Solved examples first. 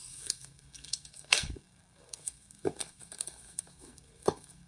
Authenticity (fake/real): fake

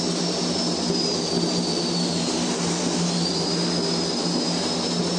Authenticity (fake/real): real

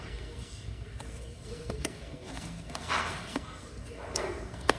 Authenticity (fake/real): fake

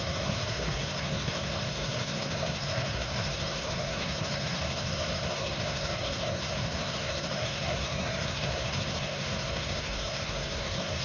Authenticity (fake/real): fake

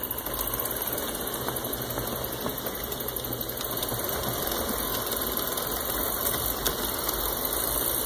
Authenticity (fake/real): real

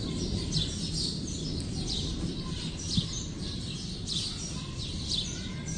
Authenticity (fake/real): real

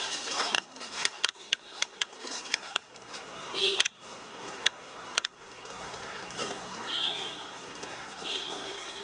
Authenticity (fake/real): fake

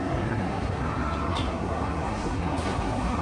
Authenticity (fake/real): fake